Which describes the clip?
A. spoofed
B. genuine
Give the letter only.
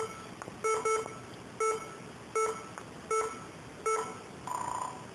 B